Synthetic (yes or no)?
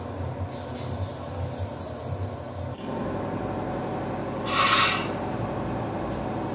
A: no